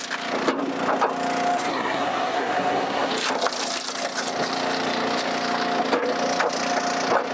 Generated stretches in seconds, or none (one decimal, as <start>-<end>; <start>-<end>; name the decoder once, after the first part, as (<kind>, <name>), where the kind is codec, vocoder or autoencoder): 1.7-3.1 (codec, SNAC)